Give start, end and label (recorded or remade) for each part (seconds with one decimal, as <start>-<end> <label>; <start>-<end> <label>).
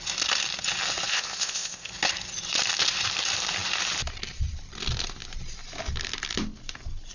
0.0-1.1 recorded; 1.1-1.9 remade; 1.9-7.1 recorded